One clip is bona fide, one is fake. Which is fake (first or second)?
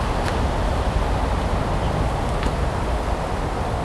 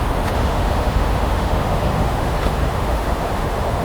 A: second